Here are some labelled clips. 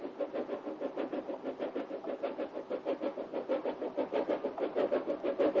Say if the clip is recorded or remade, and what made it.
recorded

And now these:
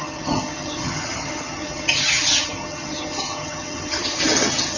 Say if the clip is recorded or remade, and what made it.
remade, vocoder, HiFi-GAN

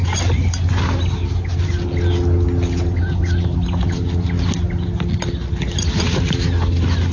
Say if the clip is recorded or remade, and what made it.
recorded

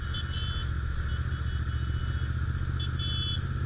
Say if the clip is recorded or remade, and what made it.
recorded